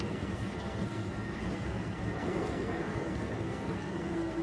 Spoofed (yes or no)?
yes